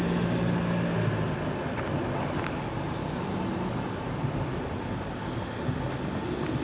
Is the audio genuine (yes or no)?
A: yes